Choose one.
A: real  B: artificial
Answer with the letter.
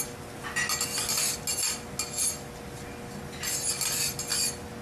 A